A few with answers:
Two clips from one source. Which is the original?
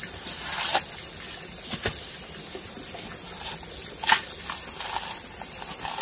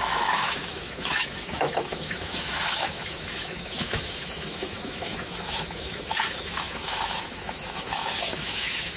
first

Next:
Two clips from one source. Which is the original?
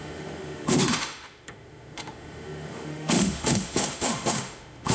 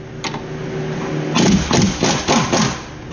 second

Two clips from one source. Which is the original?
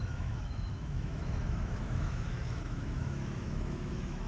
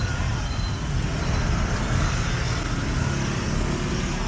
second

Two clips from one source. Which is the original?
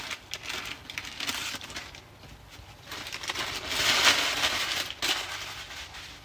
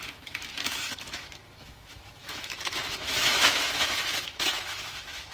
first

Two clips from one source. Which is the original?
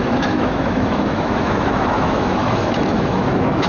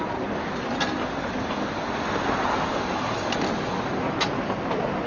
second